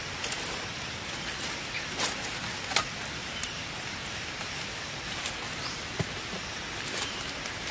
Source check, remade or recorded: recorded